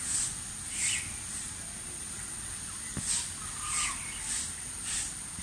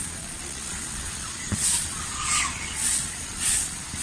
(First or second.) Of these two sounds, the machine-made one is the second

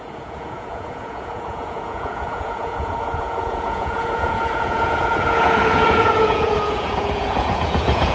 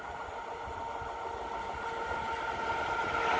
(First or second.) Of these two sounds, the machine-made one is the first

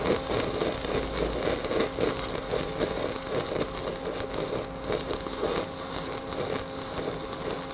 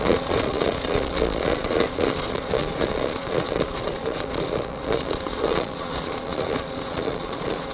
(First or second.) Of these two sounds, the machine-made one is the second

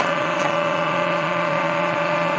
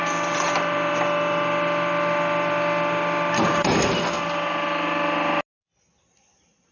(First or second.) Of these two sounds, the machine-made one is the first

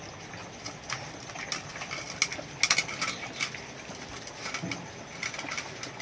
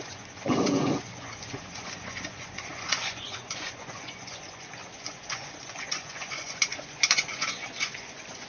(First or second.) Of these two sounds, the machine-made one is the second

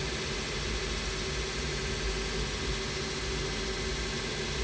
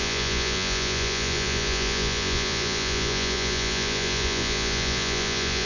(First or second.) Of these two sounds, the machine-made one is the second